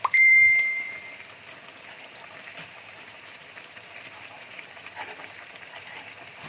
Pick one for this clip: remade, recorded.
remade